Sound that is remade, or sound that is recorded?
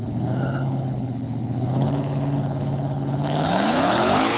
remade